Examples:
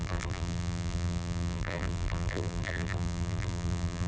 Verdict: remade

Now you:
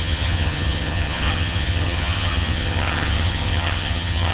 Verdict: remade